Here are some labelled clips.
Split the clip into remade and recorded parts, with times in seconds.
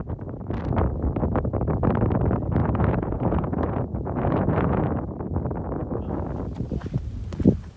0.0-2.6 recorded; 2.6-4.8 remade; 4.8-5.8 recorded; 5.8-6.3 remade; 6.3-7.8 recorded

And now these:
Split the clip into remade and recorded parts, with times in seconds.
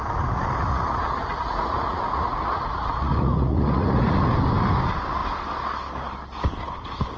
0.0-0.7 recorded; 0.7-4.2 remade; 4.2-7.2 recorded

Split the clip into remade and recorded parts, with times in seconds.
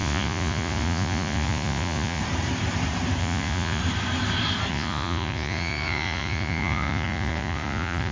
0.0-2.2 remade; 2.2-3.2 recorded; 3.2-3.8 remade; 3.8-4.7 recorded; 4.7-8.1 remade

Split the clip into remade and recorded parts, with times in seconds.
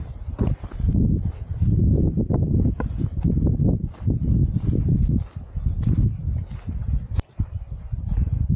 0.0-8.6 recorded